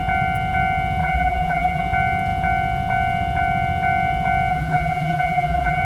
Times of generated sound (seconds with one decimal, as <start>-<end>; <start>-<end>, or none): 1.0-1.8; 4.5-5.8